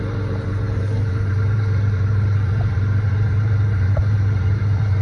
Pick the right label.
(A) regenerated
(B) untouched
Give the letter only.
A